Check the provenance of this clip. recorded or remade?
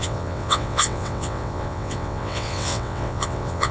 remade